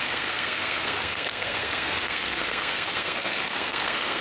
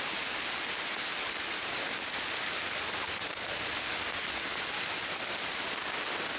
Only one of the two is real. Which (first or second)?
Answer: second